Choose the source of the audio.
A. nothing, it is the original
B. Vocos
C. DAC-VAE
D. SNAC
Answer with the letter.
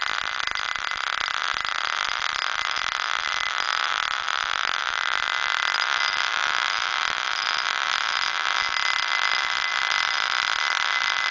A